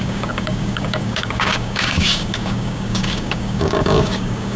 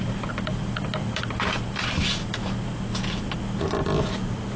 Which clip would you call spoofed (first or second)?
first